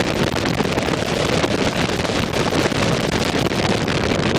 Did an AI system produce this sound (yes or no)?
no